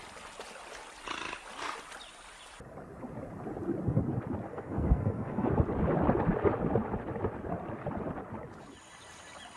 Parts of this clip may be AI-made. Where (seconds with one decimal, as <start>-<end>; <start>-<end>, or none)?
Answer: 4.5-5.5